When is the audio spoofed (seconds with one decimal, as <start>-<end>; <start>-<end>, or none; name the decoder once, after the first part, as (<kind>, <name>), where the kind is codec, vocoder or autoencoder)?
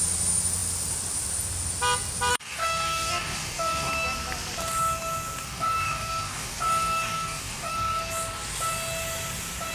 2.3-3.9 (codec, DAC); 5.4-8.0